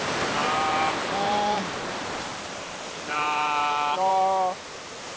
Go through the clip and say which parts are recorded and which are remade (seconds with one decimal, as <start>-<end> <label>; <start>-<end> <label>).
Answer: 0.0-0.4 recorded; 0.4-1.7 remade; 1.7-2.3 recorded; 2.3-4.1 remade; 4.1-5.2 recorded